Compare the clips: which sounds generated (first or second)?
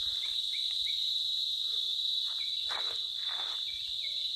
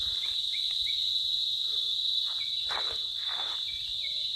first